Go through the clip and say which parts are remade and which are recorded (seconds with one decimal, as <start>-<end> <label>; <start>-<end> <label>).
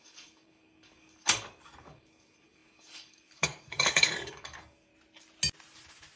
0.0-4.9 remade; 4.9-6.2 recorded